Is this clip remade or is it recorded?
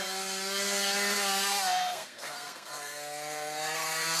remade